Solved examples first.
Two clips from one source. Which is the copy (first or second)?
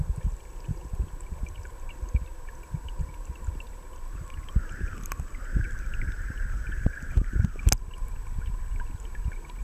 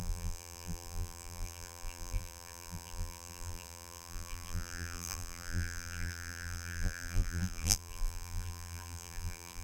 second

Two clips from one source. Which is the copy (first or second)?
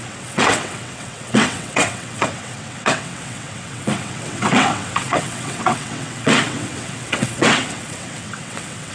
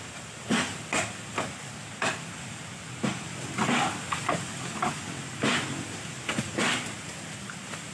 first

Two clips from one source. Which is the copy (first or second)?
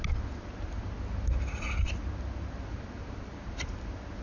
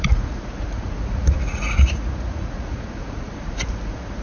second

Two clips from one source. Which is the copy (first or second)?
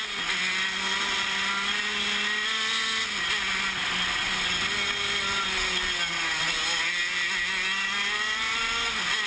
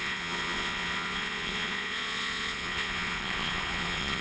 second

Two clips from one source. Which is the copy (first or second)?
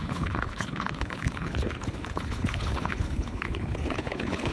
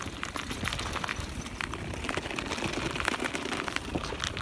first